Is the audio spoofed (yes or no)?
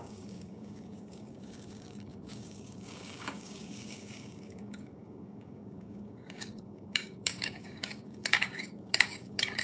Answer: yes